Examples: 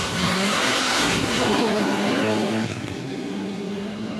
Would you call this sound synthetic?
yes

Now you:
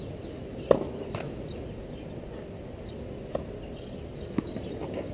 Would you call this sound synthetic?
no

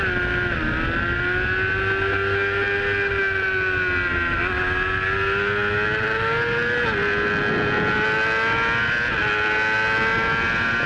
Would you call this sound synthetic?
no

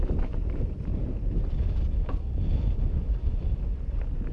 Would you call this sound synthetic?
no